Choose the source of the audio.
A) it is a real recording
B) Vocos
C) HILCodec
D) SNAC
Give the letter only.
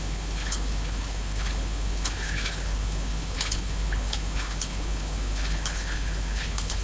C